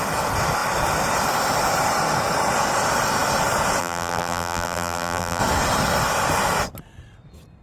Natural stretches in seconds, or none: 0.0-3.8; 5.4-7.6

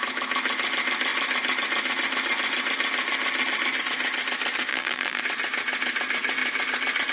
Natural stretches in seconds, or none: 0.0-4.7; 5.2-7.1

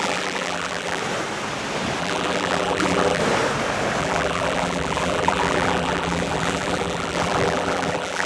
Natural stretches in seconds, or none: 1.0-2.0; 3.2-4.0